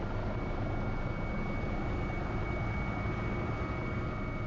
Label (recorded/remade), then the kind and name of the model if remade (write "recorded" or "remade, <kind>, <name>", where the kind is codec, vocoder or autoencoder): recorded